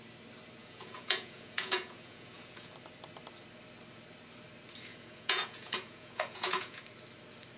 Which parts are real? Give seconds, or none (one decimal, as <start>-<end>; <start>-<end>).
0.0-0.6; 2.7-4.9; 6.8-7.6

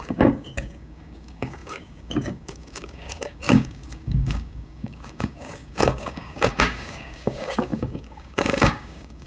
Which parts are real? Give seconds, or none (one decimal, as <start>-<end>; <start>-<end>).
none

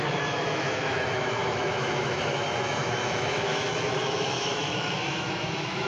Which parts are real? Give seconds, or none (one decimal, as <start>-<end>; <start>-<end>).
none